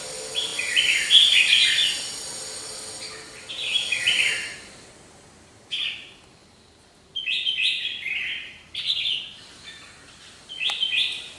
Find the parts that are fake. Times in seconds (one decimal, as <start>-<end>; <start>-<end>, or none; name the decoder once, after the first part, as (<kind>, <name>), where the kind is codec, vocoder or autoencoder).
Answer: 6.4-11.4 (vocoder, BigVGAN v2)

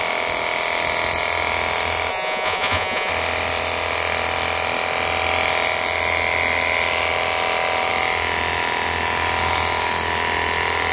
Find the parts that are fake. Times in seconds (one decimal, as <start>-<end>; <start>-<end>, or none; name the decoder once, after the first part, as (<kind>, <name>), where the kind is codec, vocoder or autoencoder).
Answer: 2.1-3.1 (vocoder, Vocos)